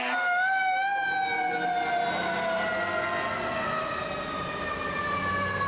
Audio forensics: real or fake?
real